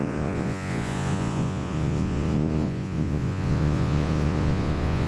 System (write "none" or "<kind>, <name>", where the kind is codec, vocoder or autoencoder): vocoder, Vocos